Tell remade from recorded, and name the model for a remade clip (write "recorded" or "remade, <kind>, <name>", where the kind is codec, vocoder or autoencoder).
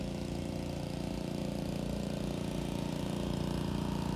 remade, vocoder, BigVGAN v2